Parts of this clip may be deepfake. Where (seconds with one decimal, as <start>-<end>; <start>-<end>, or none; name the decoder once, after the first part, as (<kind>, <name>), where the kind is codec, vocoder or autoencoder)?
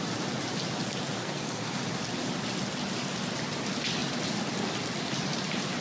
1.2-1.8 (codec, SNAC)